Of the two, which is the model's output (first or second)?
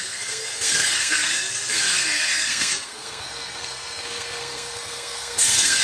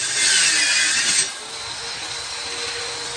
first